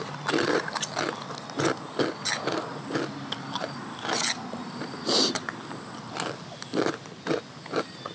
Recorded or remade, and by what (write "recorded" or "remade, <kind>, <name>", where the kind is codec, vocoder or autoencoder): recorded